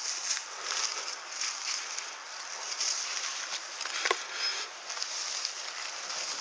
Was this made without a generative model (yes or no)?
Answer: yes